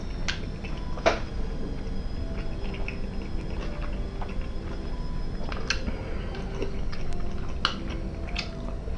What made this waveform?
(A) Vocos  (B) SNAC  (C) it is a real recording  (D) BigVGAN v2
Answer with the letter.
C